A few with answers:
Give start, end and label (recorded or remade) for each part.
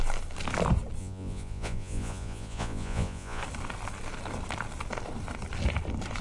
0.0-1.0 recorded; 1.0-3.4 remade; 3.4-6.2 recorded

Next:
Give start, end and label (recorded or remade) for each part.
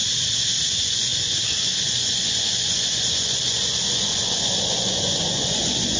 0.0-0.7 recorded; 0.7-6.0 remade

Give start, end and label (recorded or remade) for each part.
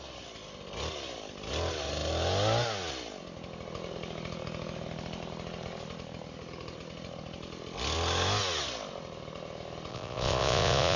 0.0-9.9 recorded; 9.9-11.0 remade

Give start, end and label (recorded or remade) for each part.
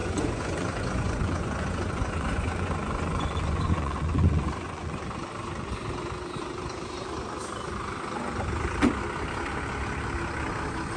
0.0-5.0 remade; 5.0-11.0 recorded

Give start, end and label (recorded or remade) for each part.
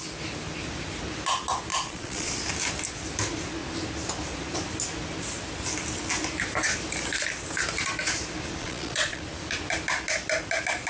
0.0-1.7 recorded; 1.7-2.3 remade; 2.3-8.6 recorded; 8.6-9.2 remade; 9.2-10.9 recorded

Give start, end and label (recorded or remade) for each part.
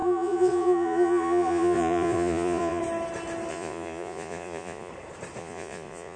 0.0-2.8 remade; 2.8-3.5 recorded; 3.5-4.9 remade; 4.9-5.4 recorded; 5.4-6.2 remade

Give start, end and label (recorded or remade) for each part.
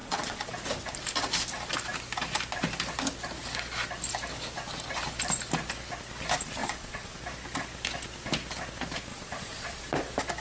0.0-0.5 remade; 0.5-6.6 recorded; 6.6-7.2 remade; 7.2-9.1 recorded; 9.1-9.8 remade; 9.8-10.4 recorded